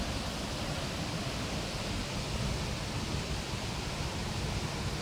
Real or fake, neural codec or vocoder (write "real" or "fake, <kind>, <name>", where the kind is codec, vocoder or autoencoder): real